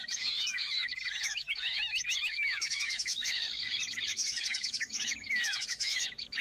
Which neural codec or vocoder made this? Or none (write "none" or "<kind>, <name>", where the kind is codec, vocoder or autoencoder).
autoencoder, DAC-VAE